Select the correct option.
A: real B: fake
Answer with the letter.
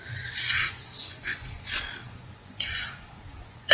B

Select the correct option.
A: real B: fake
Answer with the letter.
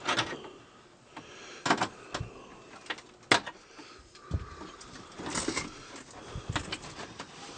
A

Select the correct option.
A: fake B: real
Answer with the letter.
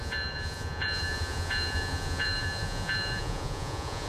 A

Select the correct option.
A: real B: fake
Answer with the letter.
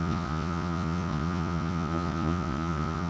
B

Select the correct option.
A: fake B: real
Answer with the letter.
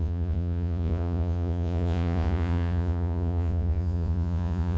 A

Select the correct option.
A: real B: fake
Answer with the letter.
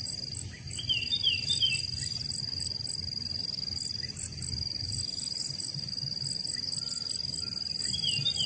A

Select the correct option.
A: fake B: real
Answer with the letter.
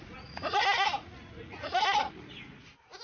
A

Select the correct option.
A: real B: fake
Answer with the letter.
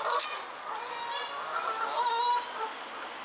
A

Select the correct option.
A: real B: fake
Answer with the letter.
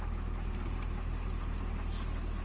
A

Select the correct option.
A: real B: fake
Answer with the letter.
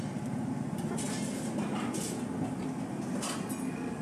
A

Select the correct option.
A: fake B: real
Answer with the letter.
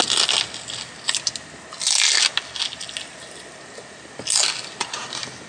B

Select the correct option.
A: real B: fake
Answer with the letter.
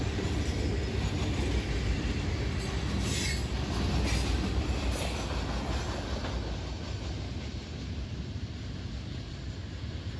A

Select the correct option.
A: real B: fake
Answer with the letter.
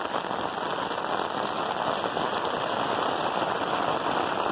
A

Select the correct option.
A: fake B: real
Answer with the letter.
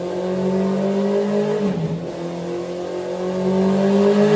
B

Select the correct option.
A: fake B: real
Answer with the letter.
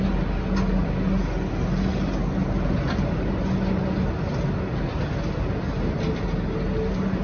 B